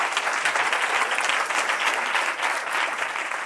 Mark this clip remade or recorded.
recorded